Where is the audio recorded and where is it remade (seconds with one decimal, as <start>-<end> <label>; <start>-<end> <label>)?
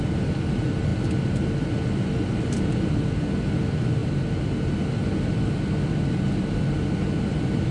0.0-7.7 recorded